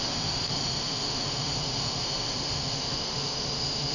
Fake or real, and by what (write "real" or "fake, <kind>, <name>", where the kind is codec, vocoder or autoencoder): fake, autoencoder, DAC-VAE